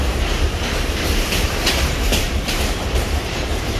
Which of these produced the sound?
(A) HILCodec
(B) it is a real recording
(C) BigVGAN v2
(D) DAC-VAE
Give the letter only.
C